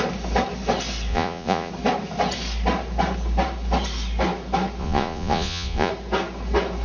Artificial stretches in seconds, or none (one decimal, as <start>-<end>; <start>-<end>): 1.1-1.7; 4.8-5.9